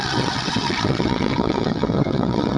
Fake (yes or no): yes